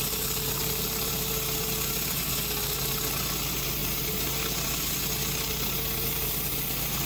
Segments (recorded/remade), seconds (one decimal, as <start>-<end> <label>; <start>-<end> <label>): 0.0-7.1 recorded